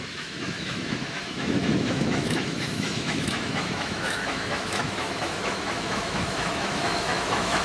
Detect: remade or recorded remade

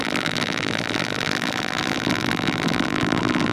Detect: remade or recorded remade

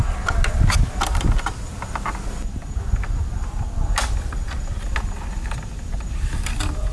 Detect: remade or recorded recorded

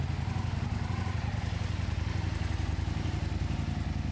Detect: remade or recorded recorded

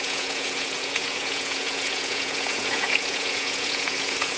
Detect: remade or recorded remade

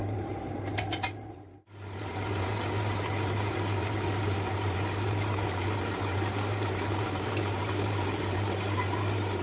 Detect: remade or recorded remade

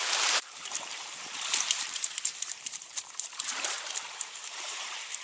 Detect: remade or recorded remade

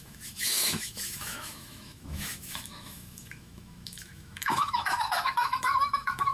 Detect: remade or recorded remade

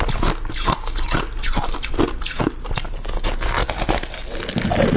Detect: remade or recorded recorded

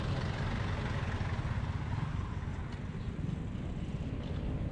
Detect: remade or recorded recorded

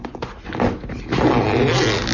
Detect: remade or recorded recorded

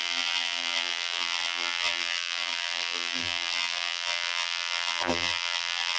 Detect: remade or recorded remade